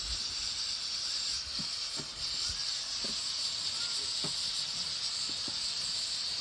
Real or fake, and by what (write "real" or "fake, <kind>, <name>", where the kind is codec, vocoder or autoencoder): real